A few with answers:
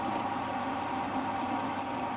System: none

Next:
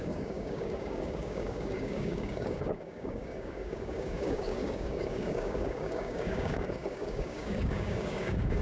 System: codec, DAC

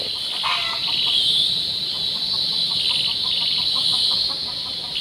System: none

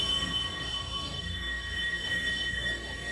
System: codec, DAC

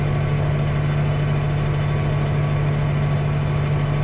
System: none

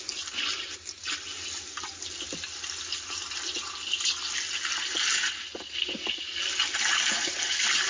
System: none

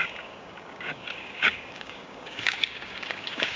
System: codec, DAC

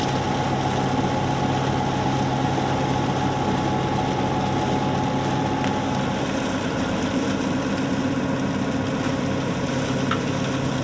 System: none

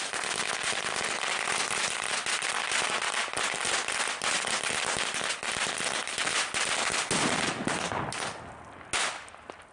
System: none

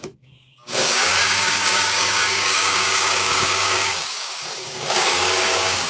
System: codec, DAC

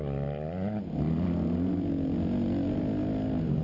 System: none